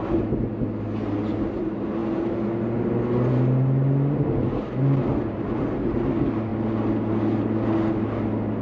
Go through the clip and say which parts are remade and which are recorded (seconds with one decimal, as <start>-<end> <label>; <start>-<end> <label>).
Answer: 0.0-8.6 recorded